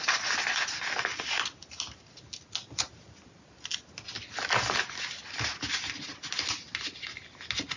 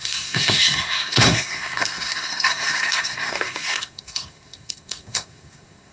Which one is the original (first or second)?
first